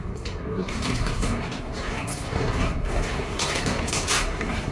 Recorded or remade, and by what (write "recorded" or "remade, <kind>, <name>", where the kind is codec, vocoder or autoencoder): remade, codec, SNAC